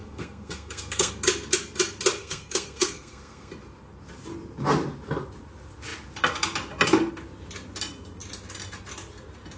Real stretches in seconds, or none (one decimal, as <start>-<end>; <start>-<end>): 1.1-2.2; 3.5-9.6